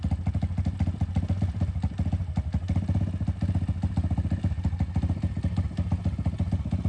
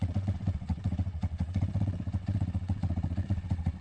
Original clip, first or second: first